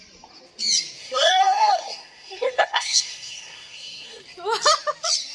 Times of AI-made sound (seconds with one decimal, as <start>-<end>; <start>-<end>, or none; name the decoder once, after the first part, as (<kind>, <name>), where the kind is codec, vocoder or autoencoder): 1.0-4.2 (codec, SNAC)